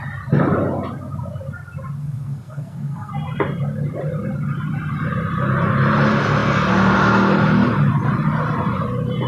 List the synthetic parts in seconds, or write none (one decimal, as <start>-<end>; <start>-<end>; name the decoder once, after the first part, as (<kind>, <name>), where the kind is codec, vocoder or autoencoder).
2.0-3.1 (codec, SNAC)